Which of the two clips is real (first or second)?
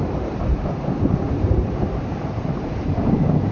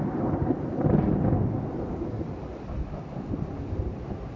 second